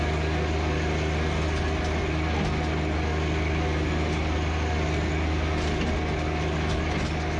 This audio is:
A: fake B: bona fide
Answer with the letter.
B